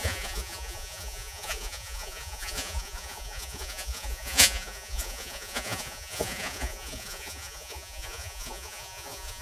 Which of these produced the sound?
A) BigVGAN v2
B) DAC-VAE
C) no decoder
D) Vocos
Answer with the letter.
D